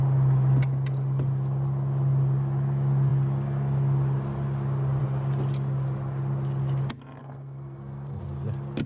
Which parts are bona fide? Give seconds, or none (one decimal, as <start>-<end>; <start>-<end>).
0.0-7.2; 8.2-8.9